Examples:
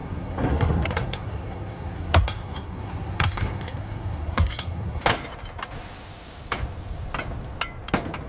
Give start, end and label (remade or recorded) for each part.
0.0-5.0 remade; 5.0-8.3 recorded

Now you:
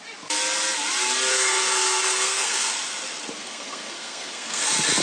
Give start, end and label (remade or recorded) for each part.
0.0-1.3 recorded; 1.3-2.7 remade; 2.7-3.4 recorded; 3.4-4.6 remade; 4.6-5.0 recorded

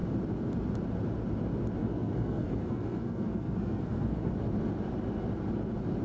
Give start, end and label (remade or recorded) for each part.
0.0-1.8 recorded; 1.8-4.3 remade; 4.3-6.0 recorded

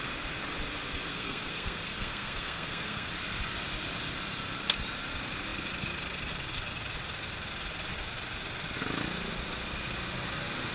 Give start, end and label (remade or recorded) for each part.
0.0-1.1 recorded; 1.1-3.1 remade; 3.1-10.7 recorded